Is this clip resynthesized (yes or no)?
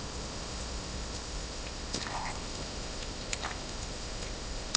yes